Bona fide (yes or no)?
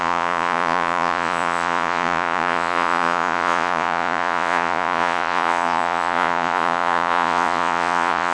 no